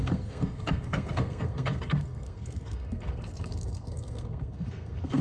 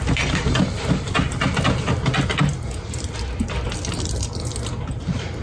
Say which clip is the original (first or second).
second